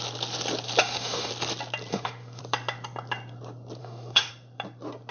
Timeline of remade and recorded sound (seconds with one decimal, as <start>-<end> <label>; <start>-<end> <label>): 0.0-0.8 recorded; 0.8-1.3 remade; 1.3-1.9 recorded; 1.9-2.4 remade; 2.4-3.8 recorded; 3.8-4.3 remade; 4.3-5.1 recorded